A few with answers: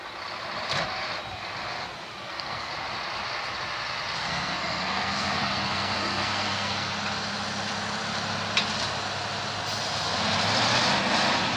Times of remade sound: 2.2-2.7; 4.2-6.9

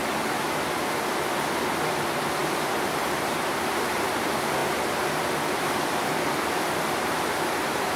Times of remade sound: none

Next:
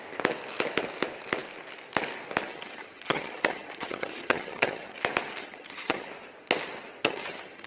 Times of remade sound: 2.5-5.0; 5.4-6.1; 7.0-7.7